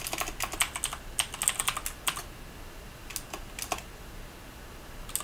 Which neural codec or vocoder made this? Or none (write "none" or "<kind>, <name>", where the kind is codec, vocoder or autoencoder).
none